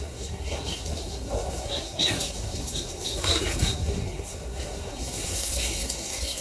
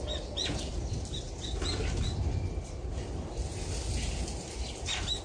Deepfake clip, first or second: first